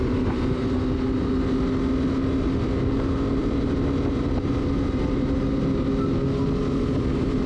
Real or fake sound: real